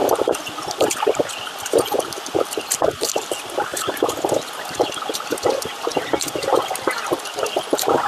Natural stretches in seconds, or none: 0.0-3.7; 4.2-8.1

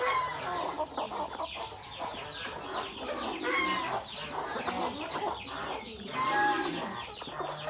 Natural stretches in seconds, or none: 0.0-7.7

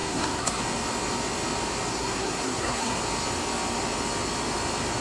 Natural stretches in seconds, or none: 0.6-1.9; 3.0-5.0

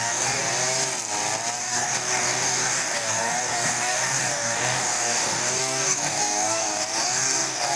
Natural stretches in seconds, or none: 0.4-1.6